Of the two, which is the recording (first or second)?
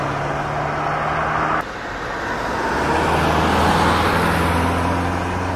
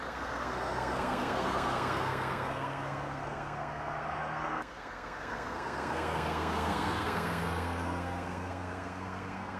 first